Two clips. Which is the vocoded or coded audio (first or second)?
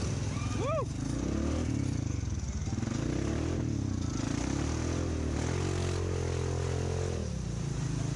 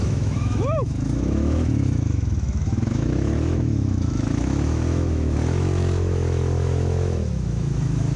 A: second